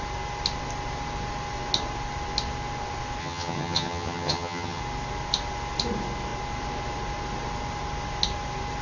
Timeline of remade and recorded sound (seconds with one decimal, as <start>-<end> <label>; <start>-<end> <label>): 0.0-3.2 recorded; 3.2-4.8 remade; 4.8-8.8 recorded

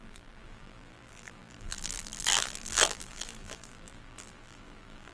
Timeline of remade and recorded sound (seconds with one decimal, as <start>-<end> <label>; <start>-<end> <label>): 0.0-5.1 remade

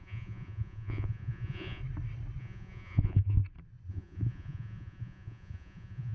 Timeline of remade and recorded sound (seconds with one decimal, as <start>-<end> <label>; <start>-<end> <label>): 0.0-1.8 remade; 1.8-2.4 recorded; 2.4-3.4 remade; 3.4-3.9 recorded; 3.9-6.1 remade